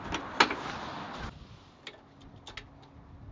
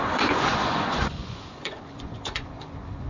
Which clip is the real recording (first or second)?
first